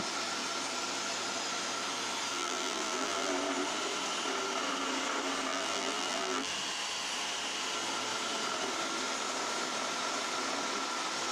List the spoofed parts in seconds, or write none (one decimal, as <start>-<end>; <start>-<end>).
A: 2.3-3.3; 5.5-6.5